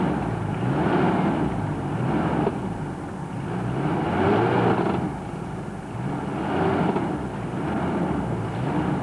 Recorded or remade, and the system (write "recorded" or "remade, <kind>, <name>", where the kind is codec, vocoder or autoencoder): recorded